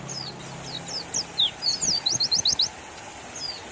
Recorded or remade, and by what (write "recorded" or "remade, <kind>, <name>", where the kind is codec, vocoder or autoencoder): recorded